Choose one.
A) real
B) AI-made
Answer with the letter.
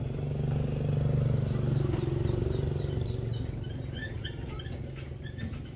A